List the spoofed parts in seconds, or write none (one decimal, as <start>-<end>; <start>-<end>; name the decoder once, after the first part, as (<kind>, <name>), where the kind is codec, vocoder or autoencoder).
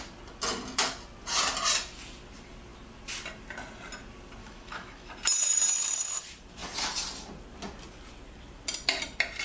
4.4-5.1 (autoencoder, DAC-VAE)